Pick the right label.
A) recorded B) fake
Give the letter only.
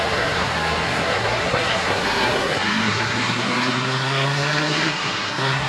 B